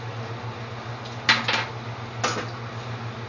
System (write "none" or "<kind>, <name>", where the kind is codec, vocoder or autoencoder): none